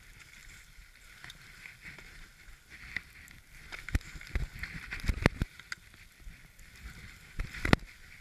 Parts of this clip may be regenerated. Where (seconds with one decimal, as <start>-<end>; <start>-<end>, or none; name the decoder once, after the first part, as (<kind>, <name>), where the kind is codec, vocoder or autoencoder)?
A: 0.4-2.4 (vocoder, BigVGAN v2)